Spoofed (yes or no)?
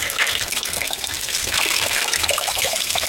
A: yes